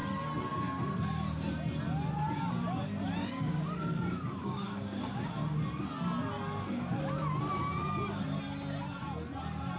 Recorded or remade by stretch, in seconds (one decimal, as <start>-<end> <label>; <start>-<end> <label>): 0.0-3.2 recorded; 3.2-3.9 remade; 3.9-4.4 recorded; 4.4-5.3 remade; 5.3-9.8 recorded